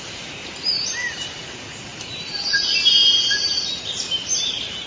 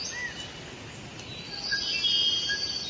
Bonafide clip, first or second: second